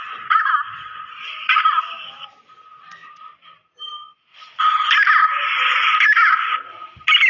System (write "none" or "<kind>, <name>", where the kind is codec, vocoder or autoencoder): vocoder, BigVGAN v2